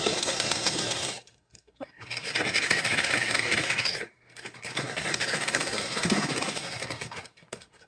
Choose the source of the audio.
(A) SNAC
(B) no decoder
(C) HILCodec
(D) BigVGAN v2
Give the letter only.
A